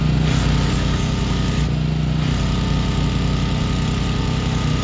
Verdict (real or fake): real